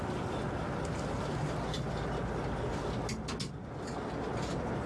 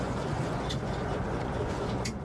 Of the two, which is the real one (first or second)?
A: first